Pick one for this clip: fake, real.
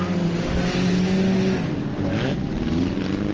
real